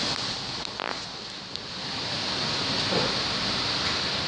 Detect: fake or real real